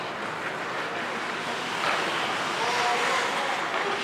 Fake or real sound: real